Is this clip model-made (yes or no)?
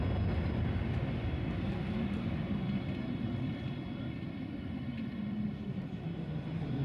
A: no